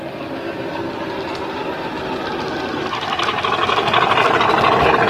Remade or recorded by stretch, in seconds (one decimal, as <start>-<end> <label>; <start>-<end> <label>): 0.0-5.1 recorded